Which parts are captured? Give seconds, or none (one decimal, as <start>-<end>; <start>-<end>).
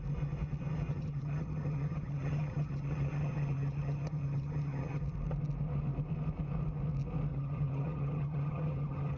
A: 0.0-0.9; 5.0-7.3